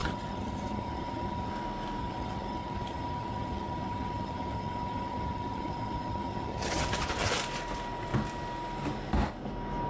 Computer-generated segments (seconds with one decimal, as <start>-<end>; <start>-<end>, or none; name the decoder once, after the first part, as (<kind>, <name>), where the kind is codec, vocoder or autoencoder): 0.0-1.5 (vocoder, HiFi-GAN); 2.0-7.3